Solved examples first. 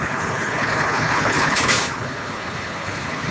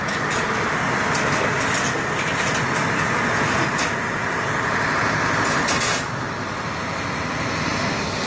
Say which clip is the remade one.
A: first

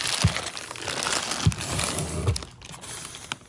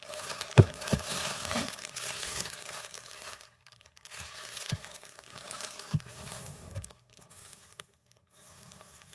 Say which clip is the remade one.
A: second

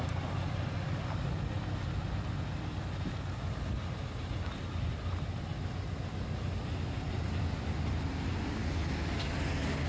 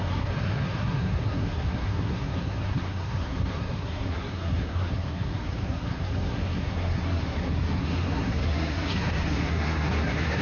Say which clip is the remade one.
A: second